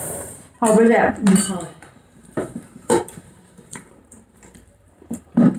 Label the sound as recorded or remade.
remade